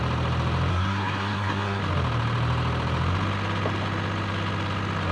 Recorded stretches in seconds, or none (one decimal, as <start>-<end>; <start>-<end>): 0.0-0.7; 1.8-5.1

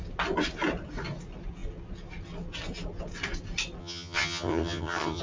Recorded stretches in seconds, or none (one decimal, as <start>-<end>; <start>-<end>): 0.0-3.8